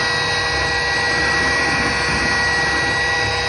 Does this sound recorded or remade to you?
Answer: recorded